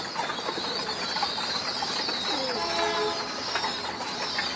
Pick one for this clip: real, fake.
real